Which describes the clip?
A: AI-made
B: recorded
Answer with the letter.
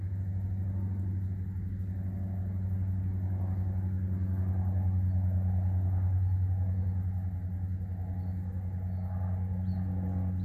B